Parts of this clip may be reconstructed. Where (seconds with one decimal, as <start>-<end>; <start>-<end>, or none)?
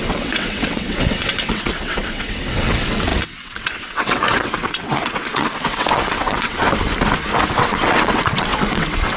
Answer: 0.0-6.6; 7.6-9.2